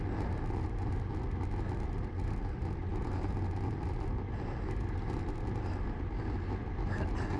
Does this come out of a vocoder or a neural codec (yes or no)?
no